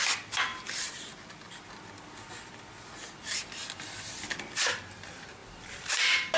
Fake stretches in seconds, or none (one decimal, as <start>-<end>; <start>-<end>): 0.5-1.6; 3.6-4.8; 5.4-6.4